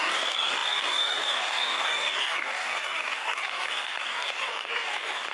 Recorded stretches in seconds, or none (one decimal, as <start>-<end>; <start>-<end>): none